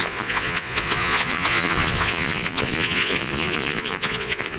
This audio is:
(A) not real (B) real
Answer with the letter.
A